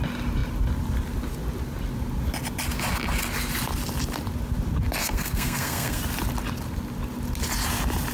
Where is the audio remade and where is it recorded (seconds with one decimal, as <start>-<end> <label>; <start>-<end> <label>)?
0.0-5.0 recorded; 5.0-6.0 remade; 6.0-8.1 recorded